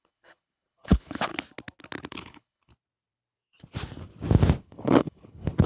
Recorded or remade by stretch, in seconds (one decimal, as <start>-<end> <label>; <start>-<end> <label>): 0.0-1.3 remade; 1.3-2.1 recorded; 2.1-2.7 remade; 2.7-4.6 recorded; 4.6-5.7 remade